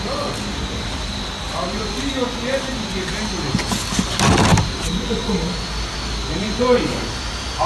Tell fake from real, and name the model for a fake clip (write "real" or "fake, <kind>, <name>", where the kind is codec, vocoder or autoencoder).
real